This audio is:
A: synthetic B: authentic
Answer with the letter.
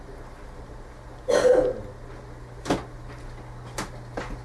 B